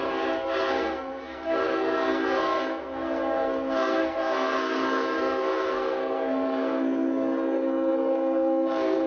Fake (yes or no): yes